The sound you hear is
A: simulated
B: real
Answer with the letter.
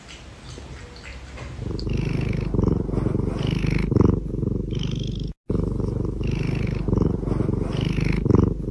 B